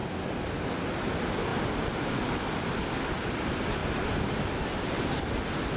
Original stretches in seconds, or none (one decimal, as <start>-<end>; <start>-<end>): 0.0-5.8